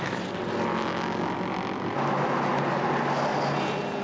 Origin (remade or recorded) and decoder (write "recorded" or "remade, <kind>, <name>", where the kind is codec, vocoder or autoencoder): recorded